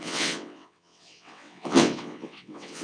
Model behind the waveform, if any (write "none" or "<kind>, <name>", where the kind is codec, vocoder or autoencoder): vocoder, WaveNeXt